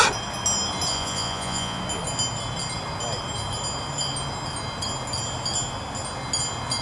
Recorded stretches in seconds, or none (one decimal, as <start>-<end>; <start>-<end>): 0.0-0.9; 1.8-6.8